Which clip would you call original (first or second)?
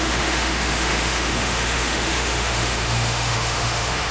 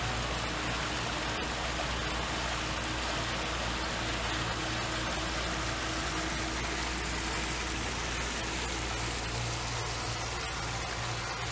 second